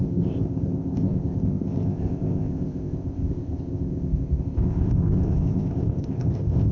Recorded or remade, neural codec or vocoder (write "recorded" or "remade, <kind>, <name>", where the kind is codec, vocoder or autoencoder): remade, codec, ZipCodec